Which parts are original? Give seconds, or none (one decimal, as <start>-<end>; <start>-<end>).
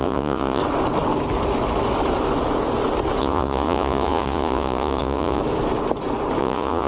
0.6-3.2; 5.4-6.4